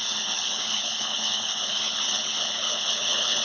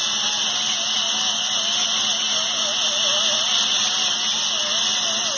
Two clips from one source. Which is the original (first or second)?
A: second